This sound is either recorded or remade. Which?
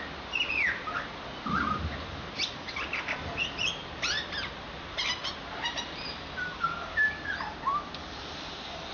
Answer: recorded